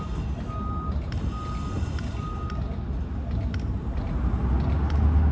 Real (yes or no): yes